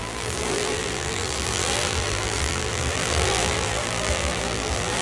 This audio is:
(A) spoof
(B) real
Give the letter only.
A